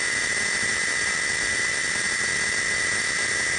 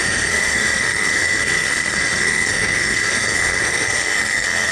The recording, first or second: first